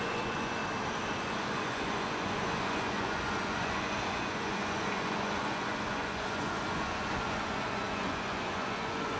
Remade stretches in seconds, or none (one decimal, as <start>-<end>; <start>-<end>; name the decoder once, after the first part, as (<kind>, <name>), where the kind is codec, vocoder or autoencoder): 0.0-0.6 (vocoder, Vocos); 1.2-9.2